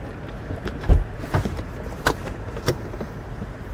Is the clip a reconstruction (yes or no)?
yes